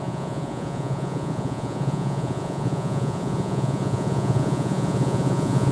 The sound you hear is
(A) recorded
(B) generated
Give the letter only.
B